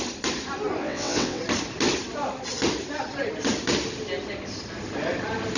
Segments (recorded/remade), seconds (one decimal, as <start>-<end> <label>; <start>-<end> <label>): 0.0-0.8 recorded; 0.8-1.4 remade; 1.4-5.6 recorded